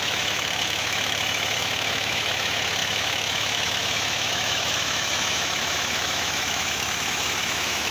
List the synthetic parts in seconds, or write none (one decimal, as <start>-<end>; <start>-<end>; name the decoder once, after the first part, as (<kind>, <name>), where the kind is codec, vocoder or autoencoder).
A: 0.0-7.9 (autoencoder, DAC-VAE)